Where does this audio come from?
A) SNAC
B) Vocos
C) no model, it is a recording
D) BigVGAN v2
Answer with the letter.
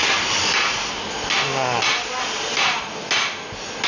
C